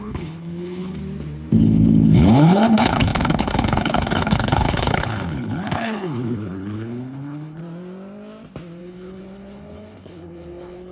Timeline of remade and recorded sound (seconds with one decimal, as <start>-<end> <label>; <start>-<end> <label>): 0.0-1.0 remade; 1.0-1.5 recorded; 1.5-7.6 remade; 7.6-8.8 recorded; 8.8-10.9 remade